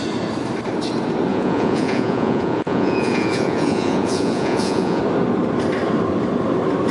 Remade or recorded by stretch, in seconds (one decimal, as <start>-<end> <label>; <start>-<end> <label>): 0.0-1.3 recorded; 1.3-5.0 remade; 5.0-6.9 recorded